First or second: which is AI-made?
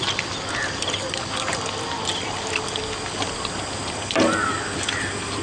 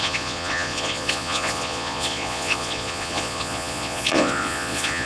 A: second